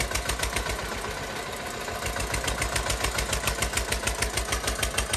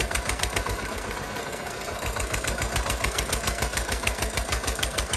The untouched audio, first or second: first